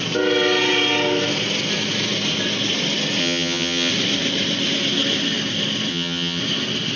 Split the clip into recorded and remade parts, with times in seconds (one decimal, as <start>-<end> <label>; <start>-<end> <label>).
0.0-3.2 recorded; 3.2-3.9 remade; 3.9-5.9 recorded; 5.9-6.4 remade; 6.4-7.0 recorded